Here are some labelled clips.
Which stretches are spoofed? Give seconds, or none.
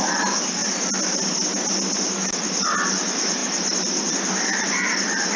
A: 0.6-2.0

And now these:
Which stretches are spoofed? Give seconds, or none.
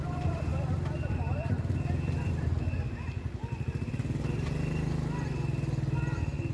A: 0.0-0.5; 1.3-2.5